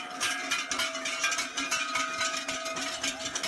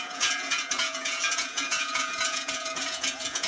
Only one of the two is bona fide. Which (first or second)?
first